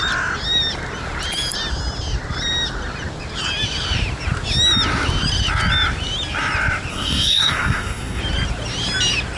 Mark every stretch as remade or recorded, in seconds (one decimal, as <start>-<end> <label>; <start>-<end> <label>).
0.0-6.9 recorded; 6.9-8.2 remade; 8.2-9.4 recorded